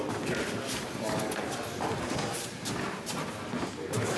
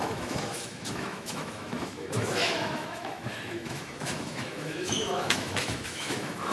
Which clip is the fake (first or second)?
second